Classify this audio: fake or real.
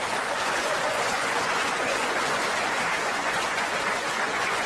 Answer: fake